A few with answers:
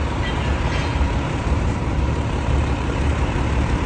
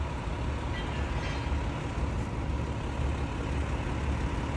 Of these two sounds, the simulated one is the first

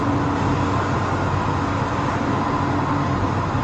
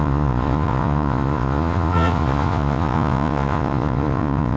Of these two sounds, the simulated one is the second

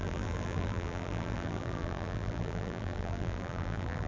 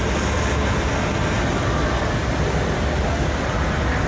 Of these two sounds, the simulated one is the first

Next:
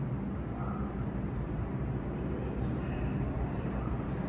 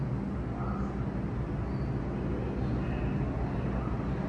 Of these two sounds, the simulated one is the first